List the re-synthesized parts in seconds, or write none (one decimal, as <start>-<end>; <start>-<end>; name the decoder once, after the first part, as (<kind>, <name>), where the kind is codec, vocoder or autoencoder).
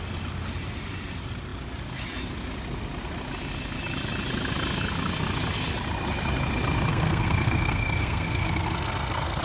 6.9-9.4 (codec, SNAC)